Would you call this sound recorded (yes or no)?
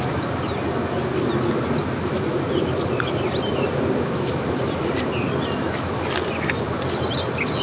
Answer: yes